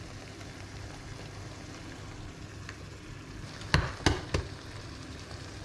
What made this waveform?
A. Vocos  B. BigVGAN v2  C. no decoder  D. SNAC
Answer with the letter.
C